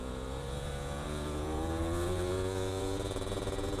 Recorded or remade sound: remade